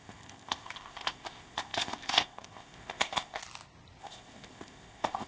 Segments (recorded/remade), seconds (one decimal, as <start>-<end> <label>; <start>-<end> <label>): 0.0-3.4 remade; 3.4-4.0 recorded; 4.0-5.3 remade

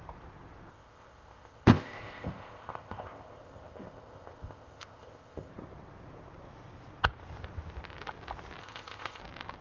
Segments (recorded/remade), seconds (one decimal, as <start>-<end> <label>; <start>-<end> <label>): 0.0-0.7 recorded; 0.7-5.5 remade; 5.5-8.6 recorded; 8.6-9.2 remade; 9.2-9.6 recorded

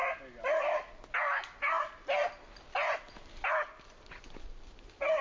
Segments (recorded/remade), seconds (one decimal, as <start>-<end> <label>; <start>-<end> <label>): 0.0-5.2 recorded

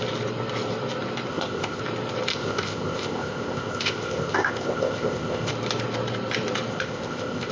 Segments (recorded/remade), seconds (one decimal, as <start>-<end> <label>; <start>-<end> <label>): 0.0-1.3 recorded; 1.3-1.8 remade; 1.8-2.3 recorded; 2.3-5.5 remade; 5.5-6.7 recorded; 6.7-7.5 remade